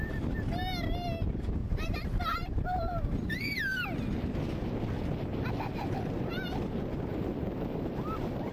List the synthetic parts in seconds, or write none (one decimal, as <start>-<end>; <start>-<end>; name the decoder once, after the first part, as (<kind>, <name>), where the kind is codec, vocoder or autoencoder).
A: 1.6-3.6 (vocoder, BigVGAN v2); 7.1-8.5